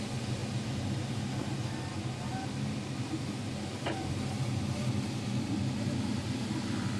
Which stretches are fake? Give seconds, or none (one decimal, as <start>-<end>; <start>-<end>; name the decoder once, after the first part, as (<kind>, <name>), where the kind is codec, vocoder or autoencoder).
none